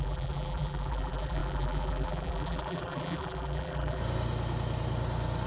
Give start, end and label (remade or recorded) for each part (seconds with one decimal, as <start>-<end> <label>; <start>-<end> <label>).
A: 0.0-4.0 remade; 4.0-5.5 recorded